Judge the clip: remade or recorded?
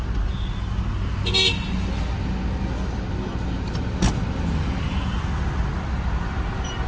recorded